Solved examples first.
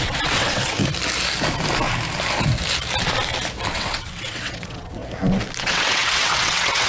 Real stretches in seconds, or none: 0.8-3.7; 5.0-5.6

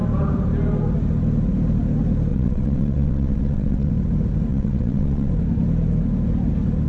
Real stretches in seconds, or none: 0.0-2.3; 3.9-4.5; 5.3-6.9

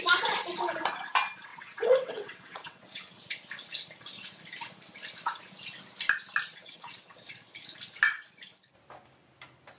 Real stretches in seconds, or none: 0.0-1.5; 3.3-6.6; 7.3-9.8

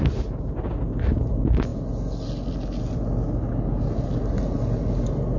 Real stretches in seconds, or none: 0.0-5.4

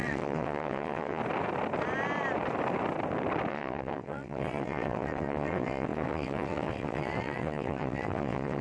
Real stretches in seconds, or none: 1.2-3.5